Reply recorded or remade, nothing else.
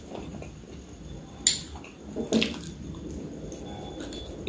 recorded